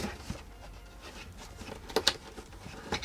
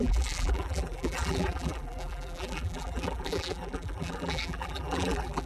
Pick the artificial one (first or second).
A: second